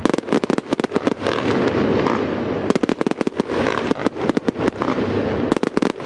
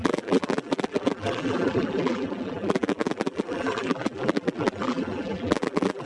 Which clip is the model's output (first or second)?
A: second